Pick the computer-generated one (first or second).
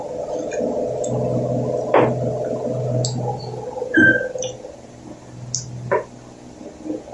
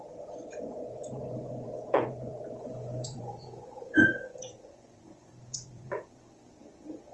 second